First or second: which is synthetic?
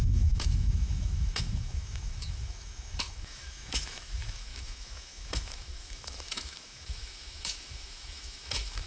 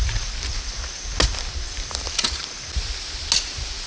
first